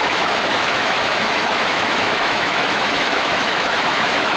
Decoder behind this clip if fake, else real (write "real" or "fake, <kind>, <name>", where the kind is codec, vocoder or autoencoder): fake, autoencoder, DAC-VAE